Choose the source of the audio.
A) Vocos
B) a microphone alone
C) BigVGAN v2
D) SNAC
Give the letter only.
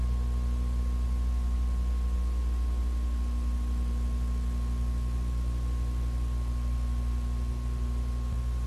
B